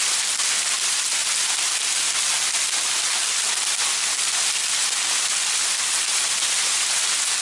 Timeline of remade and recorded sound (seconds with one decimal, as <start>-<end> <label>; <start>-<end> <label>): 0.0-7.4 recorded